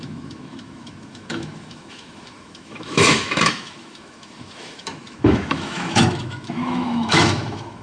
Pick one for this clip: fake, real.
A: fake